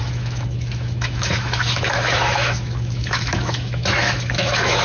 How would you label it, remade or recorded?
remade